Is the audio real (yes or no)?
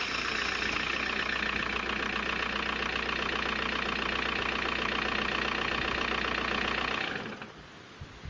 yes